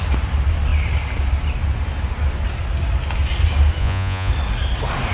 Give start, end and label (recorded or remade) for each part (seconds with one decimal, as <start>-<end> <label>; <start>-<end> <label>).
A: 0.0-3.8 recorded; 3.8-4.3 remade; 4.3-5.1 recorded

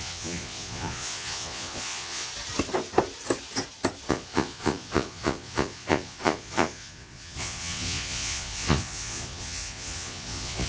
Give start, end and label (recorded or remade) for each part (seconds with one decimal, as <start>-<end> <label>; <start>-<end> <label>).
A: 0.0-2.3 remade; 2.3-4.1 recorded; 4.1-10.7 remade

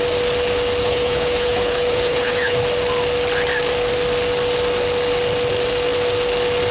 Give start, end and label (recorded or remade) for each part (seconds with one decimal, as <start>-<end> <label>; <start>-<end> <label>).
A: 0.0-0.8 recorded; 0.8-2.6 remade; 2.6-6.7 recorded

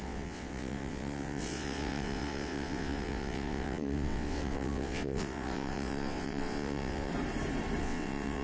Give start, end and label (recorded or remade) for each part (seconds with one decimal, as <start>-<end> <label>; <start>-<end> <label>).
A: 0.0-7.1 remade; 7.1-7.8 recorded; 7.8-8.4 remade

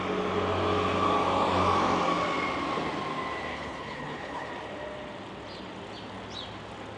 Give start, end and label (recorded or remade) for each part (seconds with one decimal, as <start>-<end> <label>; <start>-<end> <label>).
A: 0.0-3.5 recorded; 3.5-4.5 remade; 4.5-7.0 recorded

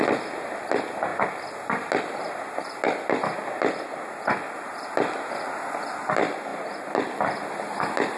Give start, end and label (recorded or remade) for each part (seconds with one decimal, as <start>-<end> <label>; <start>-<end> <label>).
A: 0.0-8.2 recorded